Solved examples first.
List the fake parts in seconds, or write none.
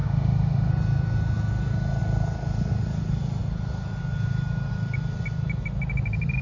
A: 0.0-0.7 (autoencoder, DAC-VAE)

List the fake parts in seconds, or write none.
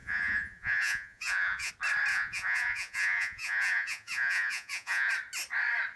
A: 0.0-1.7 (vocoder, Vocos); 2.1-5.1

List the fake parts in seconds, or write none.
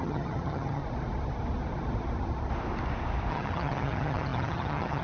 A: 0.0-0.8 (vocoder, HiFi-GAN); 3.3-5.0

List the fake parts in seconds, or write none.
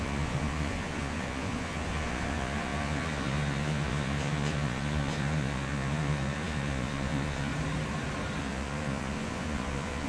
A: 0.0-7.5 (vocoder, Vocos); 8.4-10.1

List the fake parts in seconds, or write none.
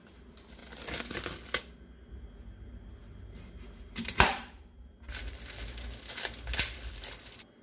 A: 3.0-4.8 (vocoder, BigVGAN v2)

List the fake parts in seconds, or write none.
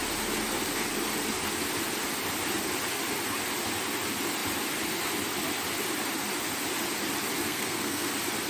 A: 7.4-8.1 (codec, SNAC)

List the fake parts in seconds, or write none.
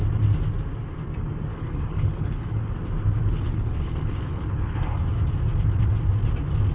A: 1.5-2.6 (codec, HILCodec); 3.2-4.8